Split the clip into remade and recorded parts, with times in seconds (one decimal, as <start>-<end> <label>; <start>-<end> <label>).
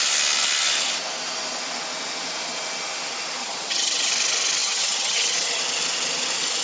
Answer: 0.0-3.4 recorded; 3.4-4.1 remade; 4.1-4.6 recorded; 4.6-5.6 remade; 5.6-6.6 recorded